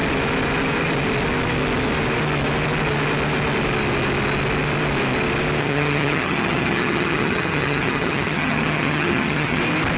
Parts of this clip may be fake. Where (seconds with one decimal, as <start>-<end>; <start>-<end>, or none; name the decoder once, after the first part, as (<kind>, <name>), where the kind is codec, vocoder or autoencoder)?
5.6-9.6 (vocoder, HiFi-GAN)